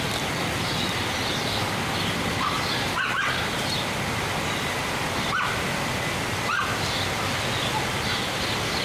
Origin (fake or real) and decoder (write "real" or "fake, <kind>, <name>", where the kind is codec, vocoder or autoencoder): real